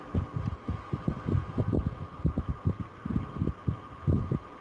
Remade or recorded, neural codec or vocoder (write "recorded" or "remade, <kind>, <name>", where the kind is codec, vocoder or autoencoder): recorded